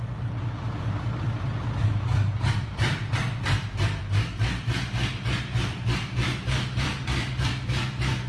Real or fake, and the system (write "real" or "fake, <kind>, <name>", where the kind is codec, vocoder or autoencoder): fake, vocoder, BigVGAN v2